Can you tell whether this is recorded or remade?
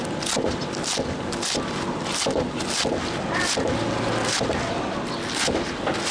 recorded